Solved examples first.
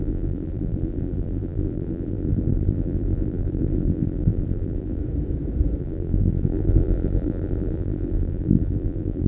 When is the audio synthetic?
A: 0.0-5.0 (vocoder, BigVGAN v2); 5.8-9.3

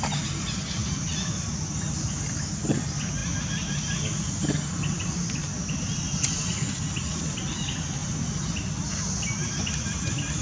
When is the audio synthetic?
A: 0.8-1.7 (vocoder, BigVGAN v2)

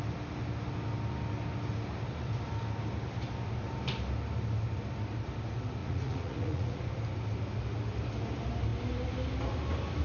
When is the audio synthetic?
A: 5.8-6.8 (vocoder, Vocos)

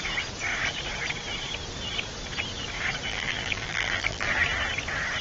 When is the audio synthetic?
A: 3.1-4.3 (vocoder, BigVGAN v2)